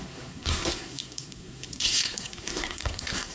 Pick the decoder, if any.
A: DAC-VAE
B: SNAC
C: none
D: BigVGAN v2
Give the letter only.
B